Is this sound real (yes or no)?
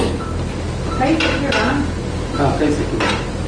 yes